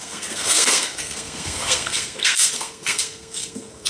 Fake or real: fake